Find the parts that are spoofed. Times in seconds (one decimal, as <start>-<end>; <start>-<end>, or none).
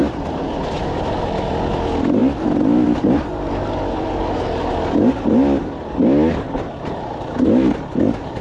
none